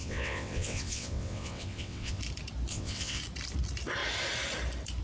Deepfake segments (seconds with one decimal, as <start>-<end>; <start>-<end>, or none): 0.0-2.2; 2.7-3.2